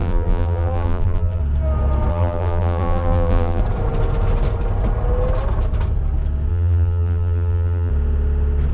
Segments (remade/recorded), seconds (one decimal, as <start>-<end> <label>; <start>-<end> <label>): 0.0-1.4 remade; 1.4-2.1 recorded; 2.1-3.6 remade; 3.6-6.5 recorded; 6.5-7.9 remade; 7.9-8.7 recorded